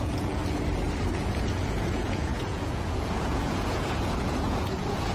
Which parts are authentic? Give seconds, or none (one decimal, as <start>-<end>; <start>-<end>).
0.4-1.1

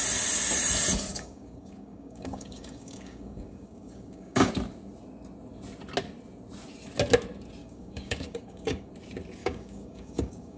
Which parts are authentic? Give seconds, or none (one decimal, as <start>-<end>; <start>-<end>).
0.0-1.1; 4.5-7.6; 8.9-9.4

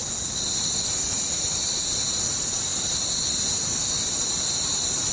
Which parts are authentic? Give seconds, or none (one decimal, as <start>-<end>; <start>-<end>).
0.0-5.1

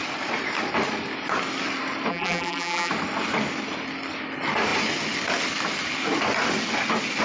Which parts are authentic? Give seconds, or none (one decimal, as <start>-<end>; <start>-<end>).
0.0-2.1; 2.9-7.2

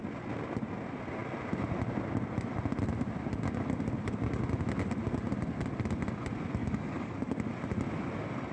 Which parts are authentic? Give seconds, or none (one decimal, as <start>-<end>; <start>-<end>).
0.0-6.6; 7.3-8.5

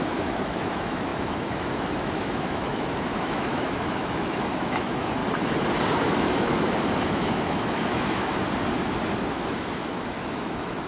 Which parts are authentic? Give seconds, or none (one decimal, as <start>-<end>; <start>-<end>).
5.2-5.9; 8.3-9.3

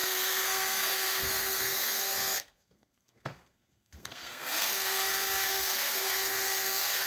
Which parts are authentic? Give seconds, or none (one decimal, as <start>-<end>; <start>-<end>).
none